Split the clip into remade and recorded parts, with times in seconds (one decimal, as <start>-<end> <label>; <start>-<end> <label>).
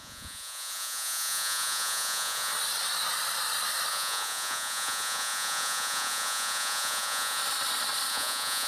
0.0-2.5 remade; 2.5-3.9 recorded; 3.9-7.4 remade; 7.4-8.1 recorded; 8.1-8.7 remade